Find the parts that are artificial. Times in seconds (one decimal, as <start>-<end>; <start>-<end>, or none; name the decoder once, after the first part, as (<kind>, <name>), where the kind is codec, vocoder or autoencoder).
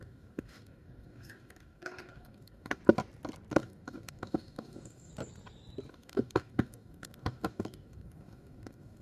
0.0-2.8 (codec, DAC); 3.5-5.1; 5.9-9.0